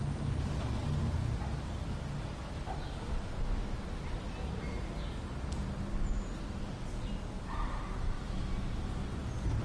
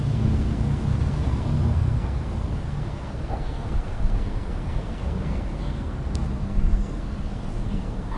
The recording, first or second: first